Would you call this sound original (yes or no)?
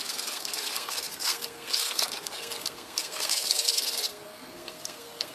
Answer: no